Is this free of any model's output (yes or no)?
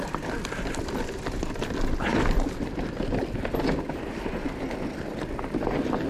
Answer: yes